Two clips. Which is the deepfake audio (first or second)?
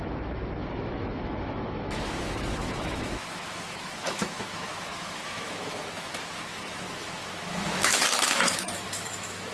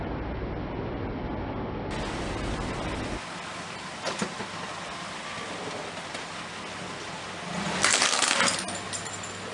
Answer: first